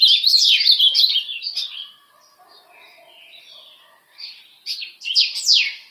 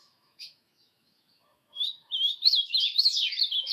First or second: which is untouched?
first